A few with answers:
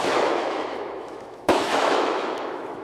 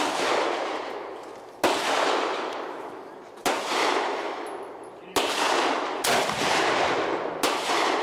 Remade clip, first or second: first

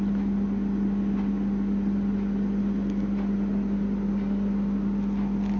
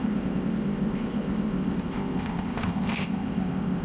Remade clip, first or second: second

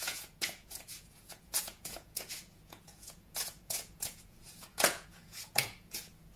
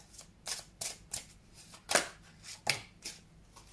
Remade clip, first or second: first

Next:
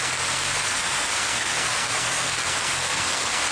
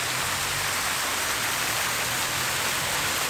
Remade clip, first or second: first